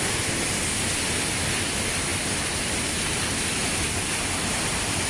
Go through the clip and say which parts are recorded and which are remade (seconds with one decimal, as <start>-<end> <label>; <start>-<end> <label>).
0.0-5.1 recorded